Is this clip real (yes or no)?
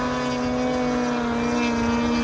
yes